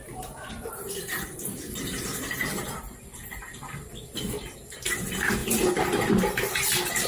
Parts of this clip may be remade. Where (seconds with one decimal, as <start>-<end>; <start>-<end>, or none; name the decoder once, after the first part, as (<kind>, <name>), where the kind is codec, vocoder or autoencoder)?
0.0-4.3 (vocoder, BigVGAN v2)

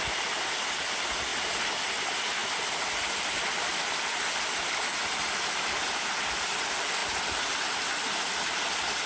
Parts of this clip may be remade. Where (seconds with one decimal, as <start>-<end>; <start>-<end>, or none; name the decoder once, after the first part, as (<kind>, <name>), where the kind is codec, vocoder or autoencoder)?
0.0-1.3 (vocoder, BigVGAN v2); 1.8-2.4; 3.1-7.0